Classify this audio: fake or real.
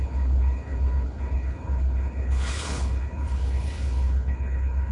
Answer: fake